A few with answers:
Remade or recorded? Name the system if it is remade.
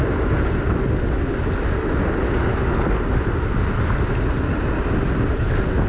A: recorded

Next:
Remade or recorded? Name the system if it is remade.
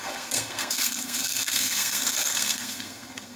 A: remade, codec, SNAC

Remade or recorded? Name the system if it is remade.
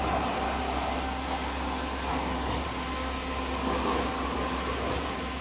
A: recorded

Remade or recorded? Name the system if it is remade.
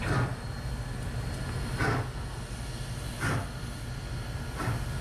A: recorded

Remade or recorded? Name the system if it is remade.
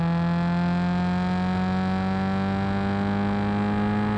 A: recorded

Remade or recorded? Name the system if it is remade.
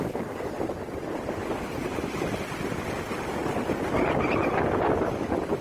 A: recorded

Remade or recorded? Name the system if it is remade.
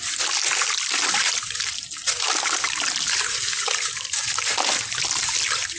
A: recorded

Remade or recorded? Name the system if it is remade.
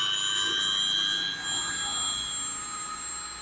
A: recorded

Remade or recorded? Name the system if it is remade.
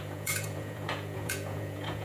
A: remade, vocoder, Vocos